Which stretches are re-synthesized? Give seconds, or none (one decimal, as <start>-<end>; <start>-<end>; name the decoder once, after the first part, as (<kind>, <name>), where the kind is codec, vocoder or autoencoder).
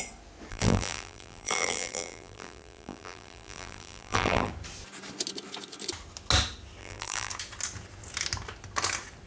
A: 0.5-4.5 (vocoder, BigVGAN v2); 6.8-7.3